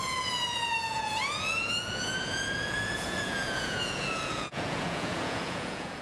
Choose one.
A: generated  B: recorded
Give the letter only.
A